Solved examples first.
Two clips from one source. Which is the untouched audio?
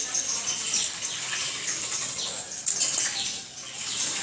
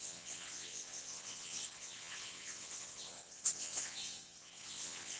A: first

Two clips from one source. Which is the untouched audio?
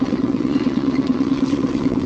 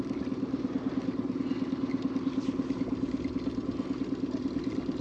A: second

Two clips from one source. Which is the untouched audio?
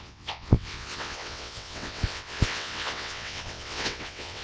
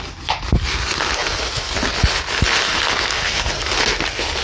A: second